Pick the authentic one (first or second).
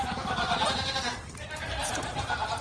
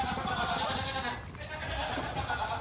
second